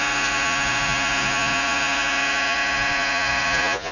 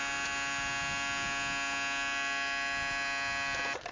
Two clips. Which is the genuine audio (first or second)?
second